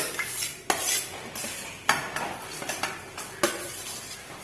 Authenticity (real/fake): real